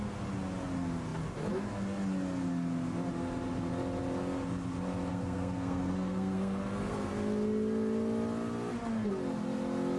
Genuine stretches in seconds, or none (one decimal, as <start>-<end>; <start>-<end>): 0.0-5.1; 7.1-10.0

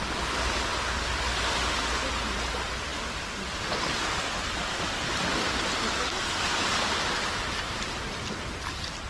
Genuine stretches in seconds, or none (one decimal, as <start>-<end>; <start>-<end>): 0.0-9.1

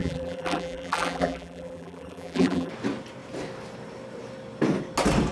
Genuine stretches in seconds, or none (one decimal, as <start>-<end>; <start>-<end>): 2.7-5.3